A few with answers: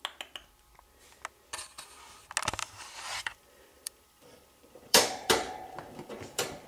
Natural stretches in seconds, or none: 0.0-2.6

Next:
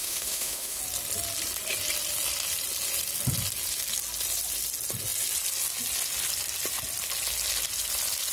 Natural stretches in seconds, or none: 0.8-8.3

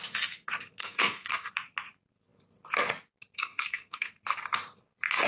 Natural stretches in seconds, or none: 0.0-0.8; 1.5-3.4; 4.1-5.3

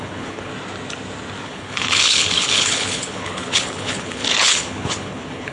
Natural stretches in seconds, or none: 0.5-1.4

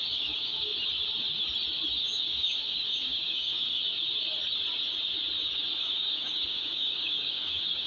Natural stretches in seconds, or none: 0.7-2.0; 3.8-5.7

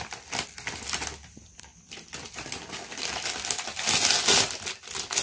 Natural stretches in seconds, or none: 0.0-5.2